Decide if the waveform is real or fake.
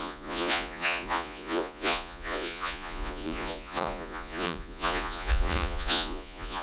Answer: fake